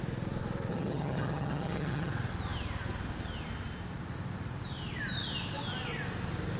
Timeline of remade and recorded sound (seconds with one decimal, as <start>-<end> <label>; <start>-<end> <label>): 0.0-0.7 recorded; 0.7-2.1 remade; 2.1-6.6 recorded